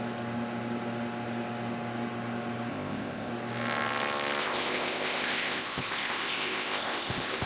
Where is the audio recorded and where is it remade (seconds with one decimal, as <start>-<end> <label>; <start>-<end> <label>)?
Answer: 0.0-2.7 recorded; 2.7-3.3 remade; 3.3-4.4 recorded; 4.4-7.5 remade